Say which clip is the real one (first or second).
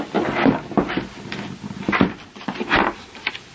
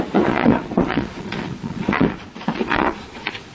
first